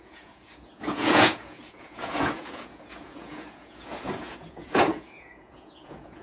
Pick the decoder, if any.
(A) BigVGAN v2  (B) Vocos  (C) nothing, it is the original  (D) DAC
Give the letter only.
B